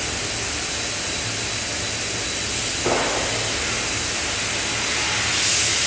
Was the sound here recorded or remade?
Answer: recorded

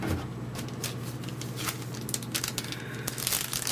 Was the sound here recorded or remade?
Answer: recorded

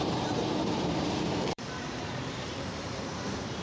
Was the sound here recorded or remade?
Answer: remade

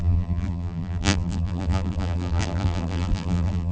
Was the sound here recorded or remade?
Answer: remade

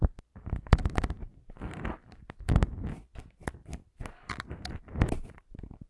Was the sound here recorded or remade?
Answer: remade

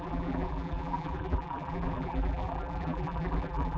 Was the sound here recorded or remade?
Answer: remade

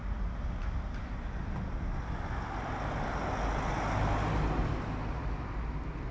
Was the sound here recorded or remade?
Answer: recorded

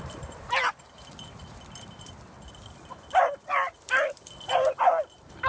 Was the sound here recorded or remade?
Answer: remade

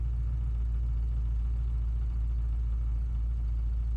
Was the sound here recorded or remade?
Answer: recorded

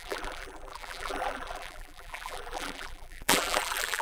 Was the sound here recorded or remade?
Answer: remade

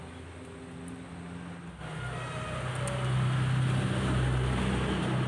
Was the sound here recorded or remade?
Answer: recorded